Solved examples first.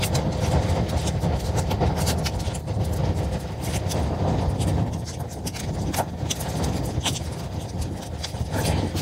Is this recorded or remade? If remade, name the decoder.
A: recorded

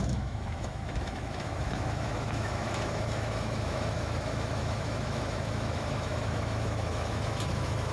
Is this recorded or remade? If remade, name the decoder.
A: remade, autoencoder, DAC-VAE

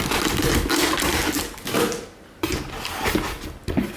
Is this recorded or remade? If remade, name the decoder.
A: recorded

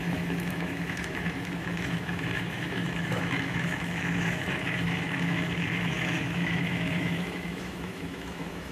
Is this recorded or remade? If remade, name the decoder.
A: remade, autoencoder, DAC-VAE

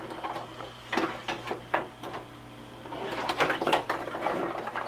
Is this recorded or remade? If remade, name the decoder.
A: recorded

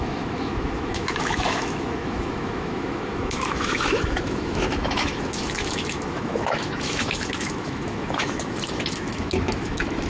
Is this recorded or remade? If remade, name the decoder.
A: remade, autoencoder, DAC-VAE